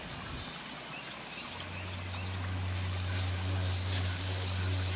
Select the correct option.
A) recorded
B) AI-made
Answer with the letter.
A